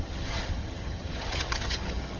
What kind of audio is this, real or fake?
fake